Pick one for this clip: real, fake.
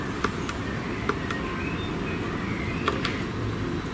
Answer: real